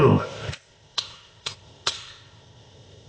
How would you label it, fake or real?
fake